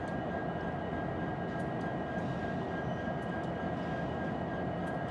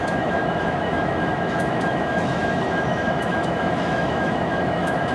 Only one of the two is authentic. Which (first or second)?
first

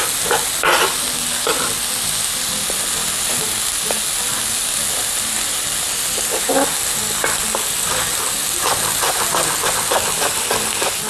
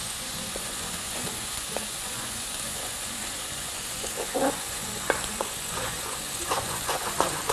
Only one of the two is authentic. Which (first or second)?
first